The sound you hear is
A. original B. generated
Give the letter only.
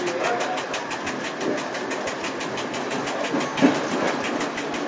A